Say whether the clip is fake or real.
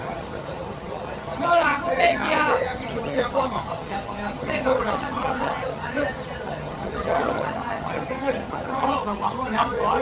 fake